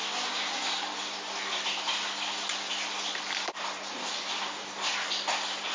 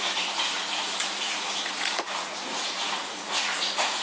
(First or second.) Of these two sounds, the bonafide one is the first